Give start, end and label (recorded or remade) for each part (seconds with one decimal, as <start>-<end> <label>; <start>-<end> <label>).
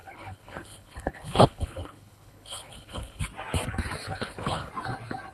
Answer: 0.0-3.2 remade; 3.2-4.1 recorded; 4.1-4.7 remade; 4.7-5.3 recorded